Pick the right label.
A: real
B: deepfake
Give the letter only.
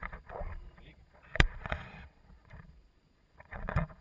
B